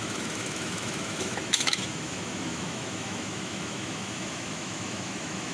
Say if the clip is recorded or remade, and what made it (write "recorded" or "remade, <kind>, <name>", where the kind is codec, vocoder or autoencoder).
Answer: remade, autoencoder, DAC-VAE